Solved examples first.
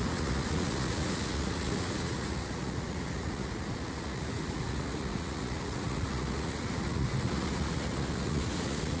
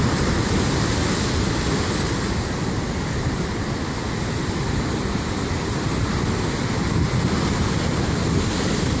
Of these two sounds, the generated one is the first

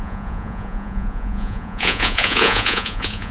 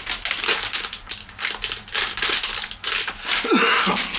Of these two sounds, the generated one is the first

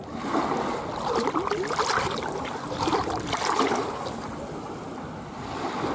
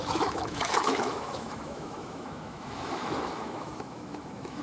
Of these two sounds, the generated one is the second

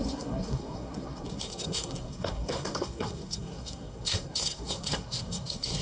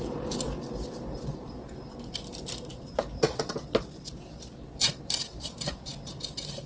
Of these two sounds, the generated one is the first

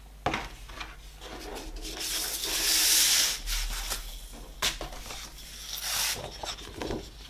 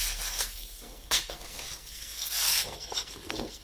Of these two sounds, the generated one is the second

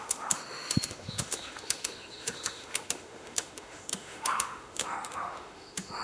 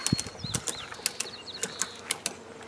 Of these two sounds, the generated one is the first